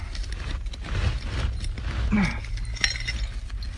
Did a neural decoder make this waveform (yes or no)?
no